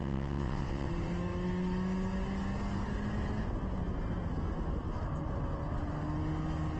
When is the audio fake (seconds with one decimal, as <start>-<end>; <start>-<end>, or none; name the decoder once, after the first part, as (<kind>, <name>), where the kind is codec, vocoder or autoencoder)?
0.0-0.9 (vocoder, WaveNeXt)

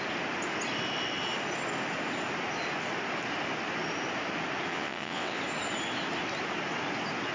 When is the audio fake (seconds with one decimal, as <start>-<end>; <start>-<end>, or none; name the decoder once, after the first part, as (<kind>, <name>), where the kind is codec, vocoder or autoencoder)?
4.7-5.4 (vocoder, WaveNeXt)

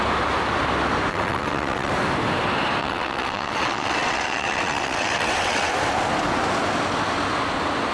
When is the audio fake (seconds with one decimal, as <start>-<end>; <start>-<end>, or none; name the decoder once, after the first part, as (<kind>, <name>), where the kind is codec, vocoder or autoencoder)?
1.1-1.9 (vocoder, WaveNeXt); 2.8-5.7

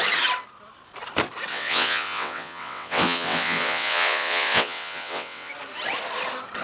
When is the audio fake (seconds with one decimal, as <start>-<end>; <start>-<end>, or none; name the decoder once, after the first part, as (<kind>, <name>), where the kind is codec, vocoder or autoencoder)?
1.5-5.5 (vocoder, WaveNeXt)